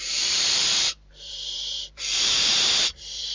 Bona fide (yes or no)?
no